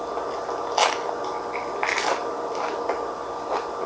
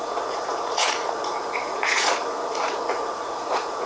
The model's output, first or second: second